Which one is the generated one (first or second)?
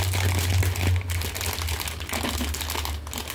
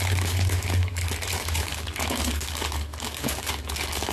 second